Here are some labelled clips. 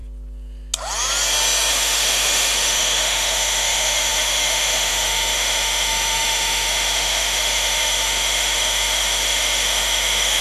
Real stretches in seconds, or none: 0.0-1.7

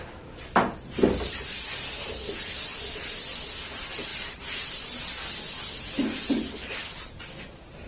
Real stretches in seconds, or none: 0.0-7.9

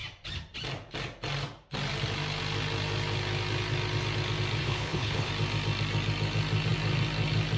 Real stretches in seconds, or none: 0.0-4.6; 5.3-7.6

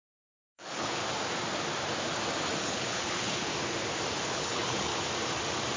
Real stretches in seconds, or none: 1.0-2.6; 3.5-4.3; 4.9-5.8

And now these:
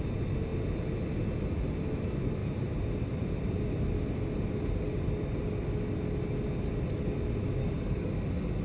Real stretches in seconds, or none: 0.0-7.6; 8.1-8.6

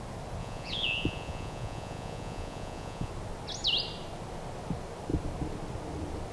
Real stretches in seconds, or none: 0.0-0.4; 3.1-6.3

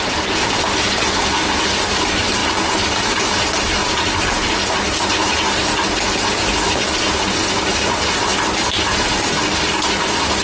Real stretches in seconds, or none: 0.0-10.4